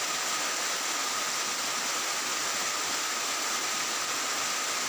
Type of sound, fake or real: real